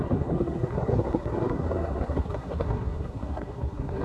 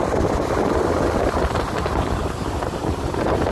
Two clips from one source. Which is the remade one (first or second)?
first